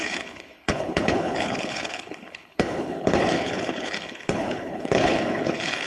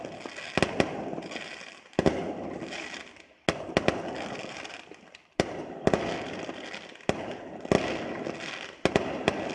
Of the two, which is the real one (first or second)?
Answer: second